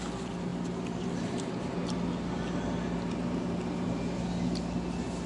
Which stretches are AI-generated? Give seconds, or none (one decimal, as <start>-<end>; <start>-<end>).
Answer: none